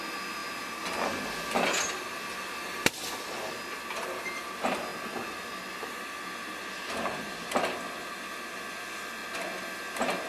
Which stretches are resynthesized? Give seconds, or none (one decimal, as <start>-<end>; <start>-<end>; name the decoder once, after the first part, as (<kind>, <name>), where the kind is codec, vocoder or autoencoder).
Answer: none